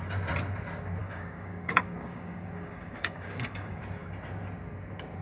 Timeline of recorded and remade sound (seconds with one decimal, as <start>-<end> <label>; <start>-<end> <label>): 0.0-1.0 recorded; 1.0-3.8 remade; 3.8-5.2 recorded